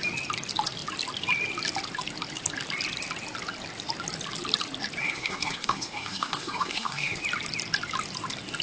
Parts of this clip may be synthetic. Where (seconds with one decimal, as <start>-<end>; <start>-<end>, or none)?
5.0-7.2